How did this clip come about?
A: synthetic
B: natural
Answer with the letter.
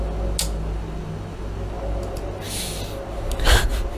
B